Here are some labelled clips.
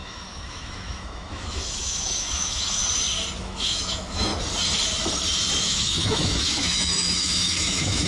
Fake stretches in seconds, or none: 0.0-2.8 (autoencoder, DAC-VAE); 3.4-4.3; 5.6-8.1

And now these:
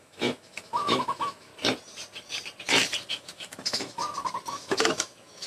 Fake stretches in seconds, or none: 0.0-1.5 (autoencoder, DAC-VAE); 3.1-4.0; 4.5-5.5

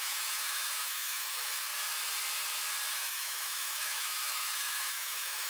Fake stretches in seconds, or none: 0.0-1.7 (autoencoder, DAC-VAE); 2.9-5.5

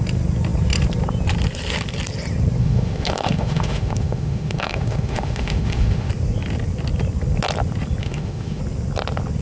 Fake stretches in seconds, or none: 2.6-6.1 (autoencoder, DAC-VAE); 8.0-8.6

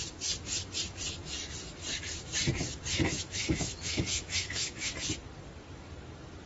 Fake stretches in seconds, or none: 2.9-4.9 (autoencoder, DAC-VAE)

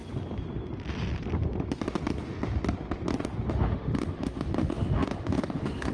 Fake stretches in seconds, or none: 3.5-5.9 (autoencoder, DAC-VAE)

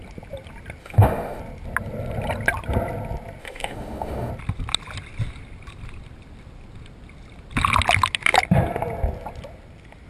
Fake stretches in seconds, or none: 0.8-1.4 (autoencoder, DAC-VAE); 3.4-4.3

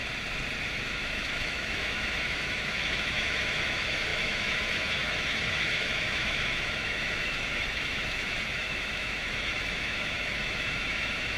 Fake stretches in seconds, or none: 0.6-11.4 (autoencoder, DAC-VAE)